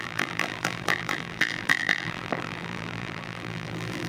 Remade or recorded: remade